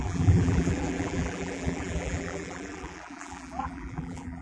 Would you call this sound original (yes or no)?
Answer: no